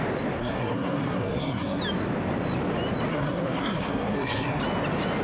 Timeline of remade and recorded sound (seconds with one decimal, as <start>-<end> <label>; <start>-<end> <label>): 0.0-0.4 recorded; 0.4-1.8 remade; 1.8-3.1 recorded; 3.1-4.6 remade; 4.6-5.2 recorded